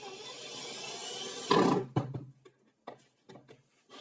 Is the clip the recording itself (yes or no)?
yes